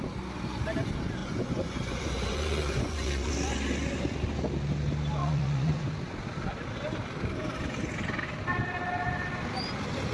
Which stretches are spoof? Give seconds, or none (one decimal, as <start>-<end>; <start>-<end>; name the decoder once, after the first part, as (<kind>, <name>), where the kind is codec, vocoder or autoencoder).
1.2-3.3 (vocoder, Vocos); 5.2-5.9